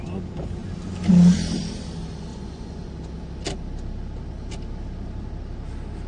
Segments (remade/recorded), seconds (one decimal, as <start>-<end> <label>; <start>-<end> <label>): 0.0-2.3 recorded; 2.3-2.9 remade; 2.9-6.1 recorded